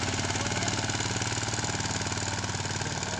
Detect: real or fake real